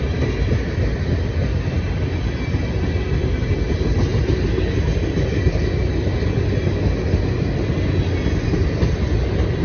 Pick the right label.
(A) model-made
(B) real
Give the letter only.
B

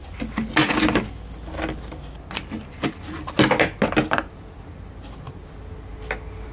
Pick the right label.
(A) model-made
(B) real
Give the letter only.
B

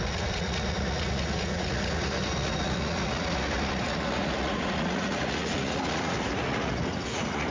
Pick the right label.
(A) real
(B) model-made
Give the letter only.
B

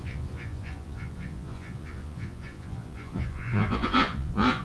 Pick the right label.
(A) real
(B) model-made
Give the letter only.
B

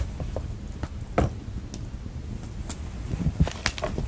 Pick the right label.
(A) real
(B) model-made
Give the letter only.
A